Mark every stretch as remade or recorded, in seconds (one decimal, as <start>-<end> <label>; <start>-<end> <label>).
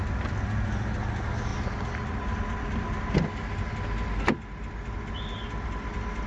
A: 0.0-6.3 recorded